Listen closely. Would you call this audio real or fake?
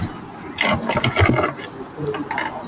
real